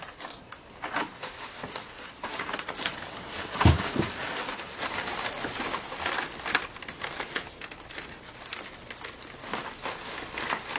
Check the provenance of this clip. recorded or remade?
recorded